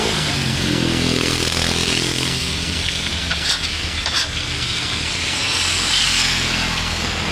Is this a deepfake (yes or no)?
yes